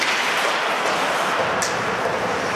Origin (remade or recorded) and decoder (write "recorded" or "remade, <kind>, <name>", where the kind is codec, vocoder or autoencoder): recorded